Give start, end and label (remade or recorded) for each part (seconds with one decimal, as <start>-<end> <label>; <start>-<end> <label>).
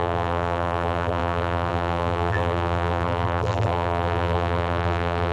0.0-5.3 remade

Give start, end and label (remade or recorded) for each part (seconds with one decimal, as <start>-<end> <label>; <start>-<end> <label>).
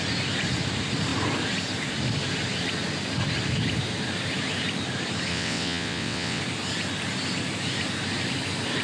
0.0-5.3 recorded; 5.3-6.4 remade; 6.4-8.8 recorded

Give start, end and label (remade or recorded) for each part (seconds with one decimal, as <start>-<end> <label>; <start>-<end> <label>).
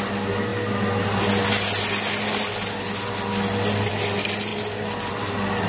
0.0-5.7 recorded